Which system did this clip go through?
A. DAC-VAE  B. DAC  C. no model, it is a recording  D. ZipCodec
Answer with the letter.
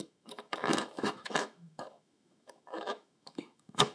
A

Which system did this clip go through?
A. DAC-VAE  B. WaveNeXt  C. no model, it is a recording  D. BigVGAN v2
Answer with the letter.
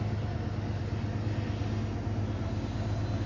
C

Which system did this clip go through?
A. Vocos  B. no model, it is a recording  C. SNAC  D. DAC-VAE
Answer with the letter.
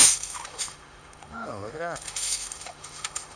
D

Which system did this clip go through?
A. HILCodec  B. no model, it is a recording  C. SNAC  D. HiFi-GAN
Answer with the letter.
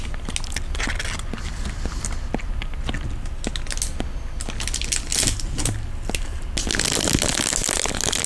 B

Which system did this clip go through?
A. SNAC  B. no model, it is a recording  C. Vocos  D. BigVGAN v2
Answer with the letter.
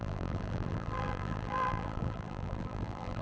D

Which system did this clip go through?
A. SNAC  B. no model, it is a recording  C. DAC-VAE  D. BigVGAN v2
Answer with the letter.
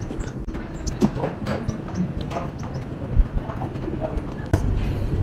B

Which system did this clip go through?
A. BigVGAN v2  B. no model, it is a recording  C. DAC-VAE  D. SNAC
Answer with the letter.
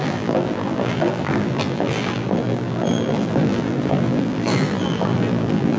A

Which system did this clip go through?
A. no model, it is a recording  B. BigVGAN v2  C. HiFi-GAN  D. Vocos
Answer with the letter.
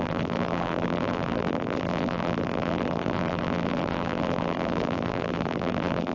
B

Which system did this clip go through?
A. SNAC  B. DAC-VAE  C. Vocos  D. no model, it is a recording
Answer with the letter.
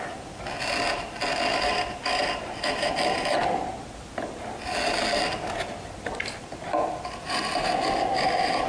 D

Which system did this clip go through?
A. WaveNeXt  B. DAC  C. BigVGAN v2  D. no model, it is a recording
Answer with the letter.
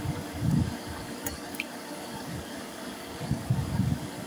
B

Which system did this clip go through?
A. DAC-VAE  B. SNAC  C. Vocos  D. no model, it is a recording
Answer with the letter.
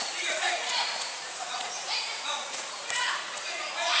C